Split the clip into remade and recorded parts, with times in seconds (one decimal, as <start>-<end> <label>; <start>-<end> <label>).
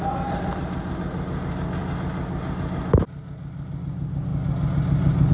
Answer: 0.0-5.3 recorded